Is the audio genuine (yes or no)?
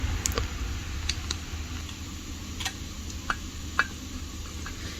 yes